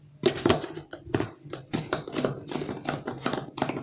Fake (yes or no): yes